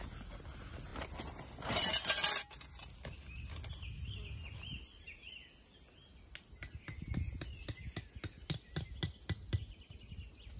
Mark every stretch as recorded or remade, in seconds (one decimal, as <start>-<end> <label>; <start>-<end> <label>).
0.0-10.6 recorded